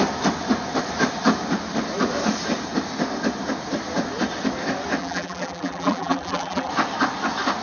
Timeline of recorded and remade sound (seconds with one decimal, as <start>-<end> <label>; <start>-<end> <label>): 0.0-5.0 recorded; 5.0-6.7 remade; 6.7-7.6 recorded